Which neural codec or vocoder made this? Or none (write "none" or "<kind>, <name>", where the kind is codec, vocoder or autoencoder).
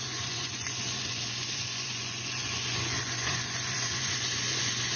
vocoder, Vocos